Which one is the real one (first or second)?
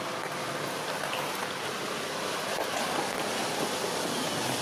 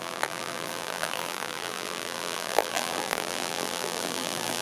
first